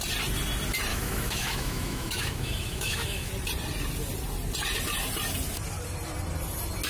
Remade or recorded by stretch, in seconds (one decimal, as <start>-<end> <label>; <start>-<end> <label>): 0.0-0.9 recorded; 0.9-3.3 remade; 3.3-6.9 recorded